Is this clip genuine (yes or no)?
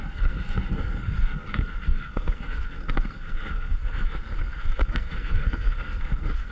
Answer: no